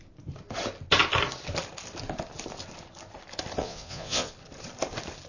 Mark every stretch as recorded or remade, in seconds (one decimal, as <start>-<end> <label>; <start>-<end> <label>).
0.0-3.6 recorded; 3.6-4.3 remade; 4.3-5.3 recorded